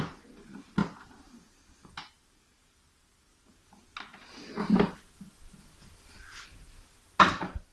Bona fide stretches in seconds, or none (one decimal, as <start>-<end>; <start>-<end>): 0.0-7.7